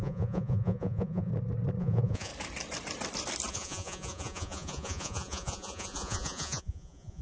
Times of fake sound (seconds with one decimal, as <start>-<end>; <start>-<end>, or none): 0.0-1.3; 1.8-2.3; 3.5-7.2

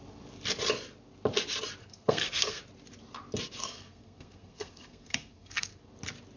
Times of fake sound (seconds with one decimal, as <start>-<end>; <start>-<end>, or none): 1.8-2.6; 3.6-5.8

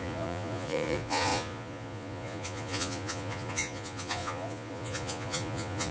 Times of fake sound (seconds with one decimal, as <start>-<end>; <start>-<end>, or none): 0.0-5.9

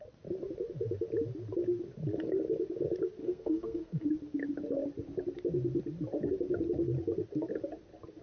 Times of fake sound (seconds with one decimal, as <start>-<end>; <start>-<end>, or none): 3.2-4.1

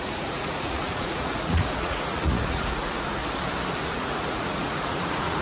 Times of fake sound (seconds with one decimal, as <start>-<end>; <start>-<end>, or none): 0.0-3.2; 3.8-5.4

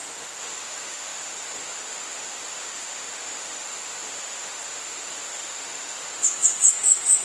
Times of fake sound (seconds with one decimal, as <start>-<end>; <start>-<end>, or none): 0.0-7.2

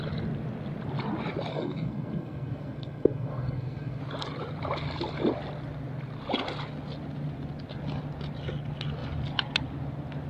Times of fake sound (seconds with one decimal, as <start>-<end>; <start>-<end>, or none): 1.5-4.0